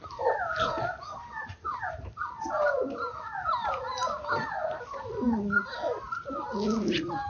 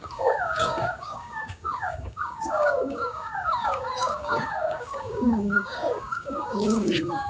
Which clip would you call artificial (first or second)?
second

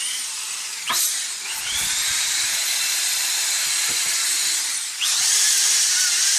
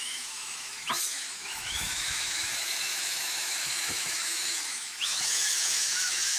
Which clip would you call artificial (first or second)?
second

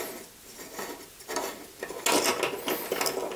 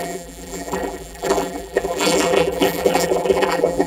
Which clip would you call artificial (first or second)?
second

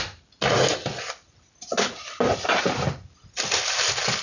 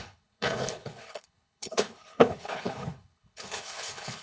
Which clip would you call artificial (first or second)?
second